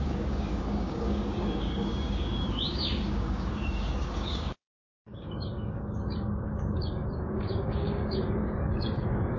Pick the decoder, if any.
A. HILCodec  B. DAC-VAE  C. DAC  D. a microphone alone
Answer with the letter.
C